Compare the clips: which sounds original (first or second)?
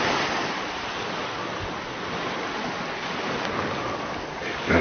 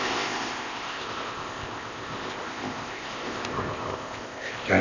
first